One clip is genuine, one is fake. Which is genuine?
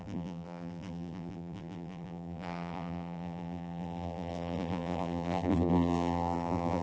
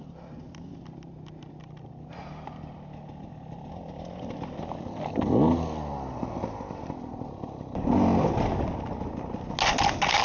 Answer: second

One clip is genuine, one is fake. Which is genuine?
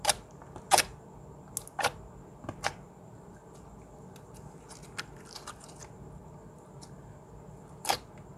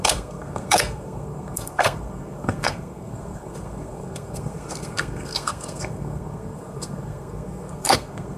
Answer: first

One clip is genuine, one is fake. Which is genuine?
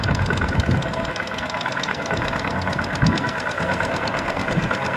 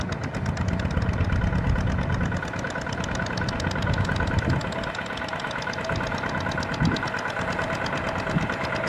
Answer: second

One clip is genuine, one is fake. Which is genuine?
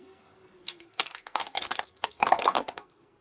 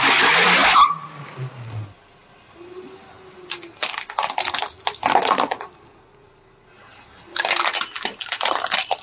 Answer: second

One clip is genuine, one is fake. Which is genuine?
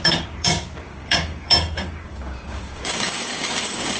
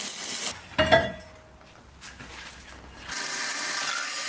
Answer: second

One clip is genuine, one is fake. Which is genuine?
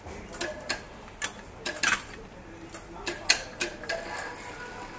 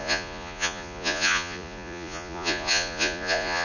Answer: first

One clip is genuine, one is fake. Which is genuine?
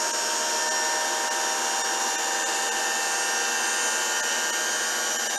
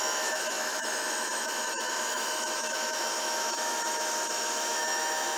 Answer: first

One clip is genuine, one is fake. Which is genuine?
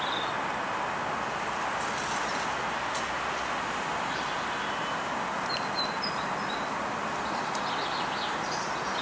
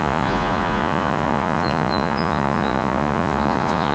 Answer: first